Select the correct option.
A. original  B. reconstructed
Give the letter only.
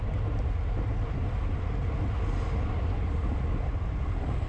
A